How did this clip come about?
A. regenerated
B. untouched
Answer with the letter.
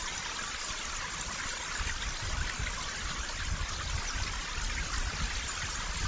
B